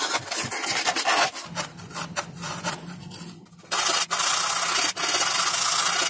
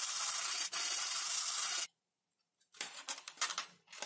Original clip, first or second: first